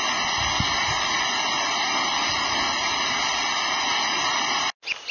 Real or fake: real